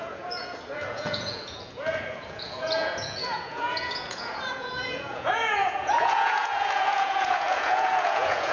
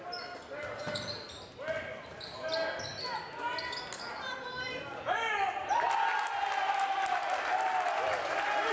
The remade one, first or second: first